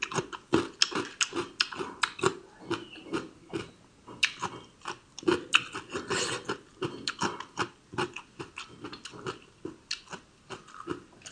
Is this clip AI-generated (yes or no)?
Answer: no